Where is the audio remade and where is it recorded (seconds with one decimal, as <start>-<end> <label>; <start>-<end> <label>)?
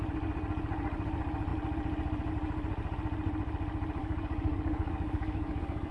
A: 0.0-4.0 recorded; 4.0-5.9 remade